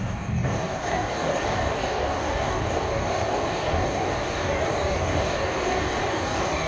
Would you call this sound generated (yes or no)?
yes